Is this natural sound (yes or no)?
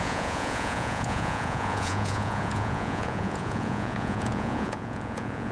no